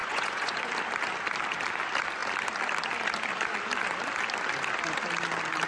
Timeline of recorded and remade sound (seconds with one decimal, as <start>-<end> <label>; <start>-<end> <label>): 0.0-0.7 remade; 0.7-5.7 recorded